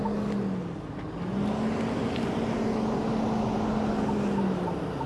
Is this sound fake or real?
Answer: real